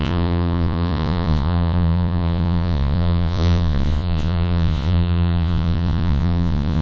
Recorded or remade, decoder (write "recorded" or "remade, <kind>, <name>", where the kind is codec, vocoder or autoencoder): remade, vocoder, Vocos